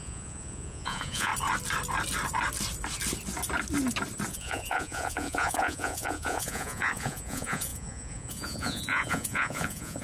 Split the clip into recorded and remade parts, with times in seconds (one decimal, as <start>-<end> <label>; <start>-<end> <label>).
0.0-1.3 remade; 1.3-4.3 recorded; 4.3-10.0 remade